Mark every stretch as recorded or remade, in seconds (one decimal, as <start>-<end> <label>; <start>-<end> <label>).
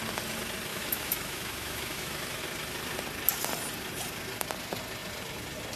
0.0-0.7 recorded; 0.7-2.4 remade; 2.4-5.8 recorded